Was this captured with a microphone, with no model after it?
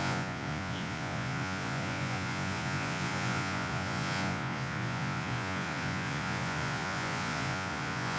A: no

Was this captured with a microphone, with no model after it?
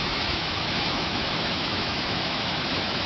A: no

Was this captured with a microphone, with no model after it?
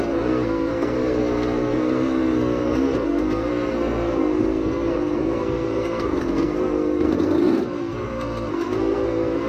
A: no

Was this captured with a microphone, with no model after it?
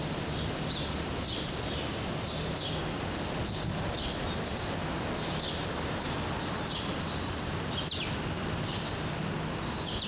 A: yes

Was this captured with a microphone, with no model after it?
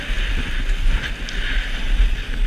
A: yes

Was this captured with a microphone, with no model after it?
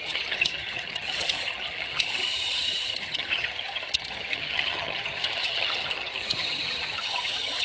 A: no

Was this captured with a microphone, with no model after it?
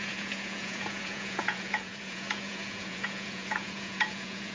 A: no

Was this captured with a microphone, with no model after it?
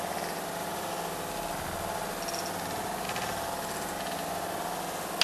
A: yes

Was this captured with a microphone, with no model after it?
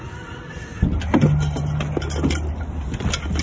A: yes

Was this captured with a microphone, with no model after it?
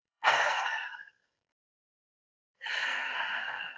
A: no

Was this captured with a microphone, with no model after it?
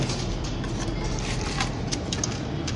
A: yes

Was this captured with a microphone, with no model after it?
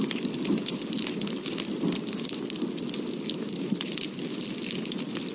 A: yes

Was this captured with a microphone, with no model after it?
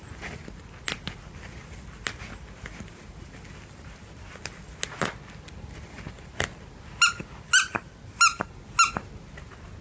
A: yes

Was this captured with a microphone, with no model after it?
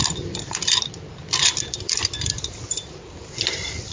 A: no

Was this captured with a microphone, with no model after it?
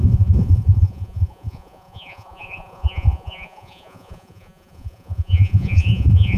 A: no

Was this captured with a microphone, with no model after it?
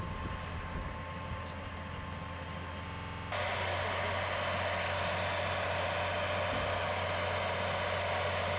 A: yes